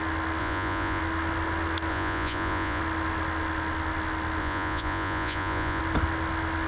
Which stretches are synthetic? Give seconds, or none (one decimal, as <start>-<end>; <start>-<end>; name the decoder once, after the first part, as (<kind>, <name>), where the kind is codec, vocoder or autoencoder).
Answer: 0.4-1.0 (vocoder, Vocos); 1.9-2.8; 4.4-5.8